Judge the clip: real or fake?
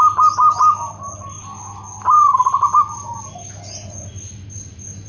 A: real